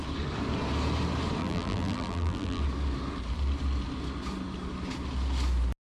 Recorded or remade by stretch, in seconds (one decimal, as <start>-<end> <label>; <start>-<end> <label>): 0.0-1.4 recorded; 1.4-2.6 remade; 2.6-5.9 recorded